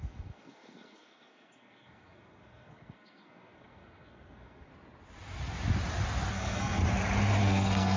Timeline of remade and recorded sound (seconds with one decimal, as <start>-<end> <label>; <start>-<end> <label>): 0.0-4.7 remade; 4.7-6.3 recorded; 6.3-6.8 remade; 6.8-7.4 recorded; 7.4-8.0 remade